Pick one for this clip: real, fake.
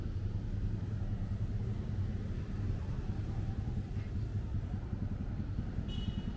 real